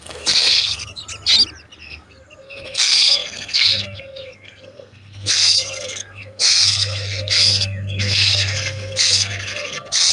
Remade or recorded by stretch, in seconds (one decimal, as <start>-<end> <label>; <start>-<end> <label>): 0.0-1.0 remade; 1.0-1.8 recorded; 1.8-10.1 remade